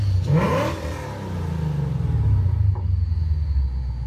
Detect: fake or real real